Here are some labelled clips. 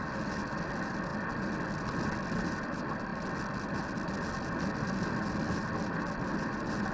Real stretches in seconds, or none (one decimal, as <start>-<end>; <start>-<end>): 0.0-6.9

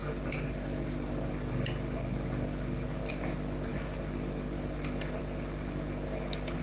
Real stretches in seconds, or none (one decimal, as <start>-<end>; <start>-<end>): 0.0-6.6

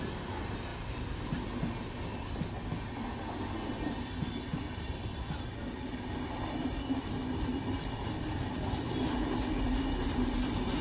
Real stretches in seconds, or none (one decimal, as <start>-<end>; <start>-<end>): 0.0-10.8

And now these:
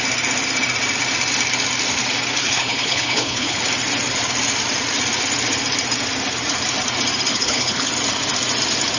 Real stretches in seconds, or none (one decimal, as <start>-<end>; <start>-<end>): 0.0-2.4; 3.6-7.3; 7.9-9.0